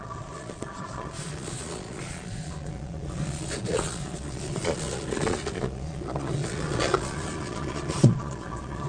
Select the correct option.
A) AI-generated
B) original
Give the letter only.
A